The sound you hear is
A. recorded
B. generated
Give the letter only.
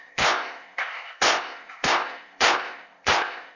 B